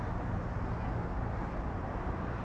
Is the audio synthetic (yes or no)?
no